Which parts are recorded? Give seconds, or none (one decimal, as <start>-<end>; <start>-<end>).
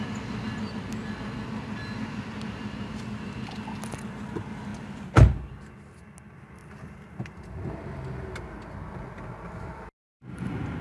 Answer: 0.0-6.6; 7.6-10.8